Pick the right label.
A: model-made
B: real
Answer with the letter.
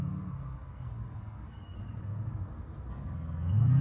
A